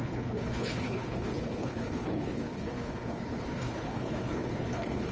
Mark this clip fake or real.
fake